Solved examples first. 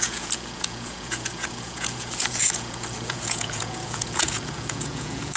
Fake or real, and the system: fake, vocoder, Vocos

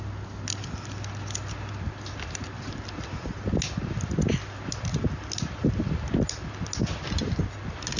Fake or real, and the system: real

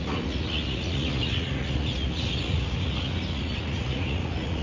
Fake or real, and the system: fake, vocoder, Vocos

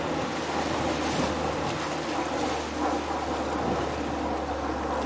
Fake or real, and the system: real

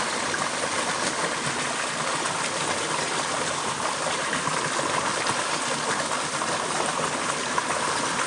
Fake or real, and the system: real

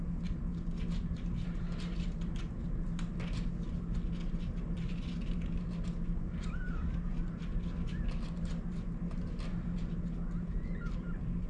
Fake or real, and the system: real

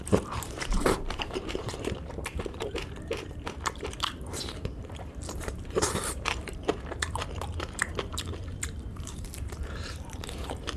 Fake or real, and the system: fake, vocoder, BigVGAN v2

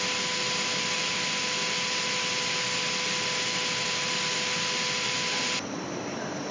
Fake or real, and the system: real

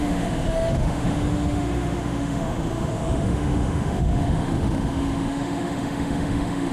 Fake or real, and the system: fake, autoencoder, DAC-VAE